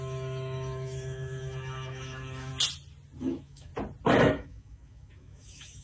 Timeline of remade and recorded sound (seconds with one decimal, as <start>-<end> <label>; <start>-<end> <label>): 0.0-2.5 remade; 2.5-3.2 recorded; 3.2-3.7 remade; 3.7-4.2 recorded; 4.2-5.8 remade